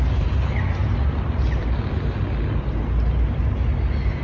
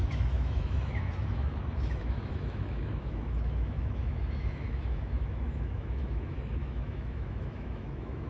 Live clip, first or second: first